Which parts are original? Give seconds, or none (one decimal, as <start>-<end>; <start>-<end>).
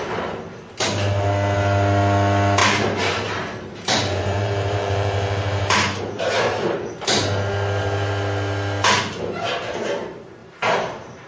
0.0-2.6; 6.0-10.4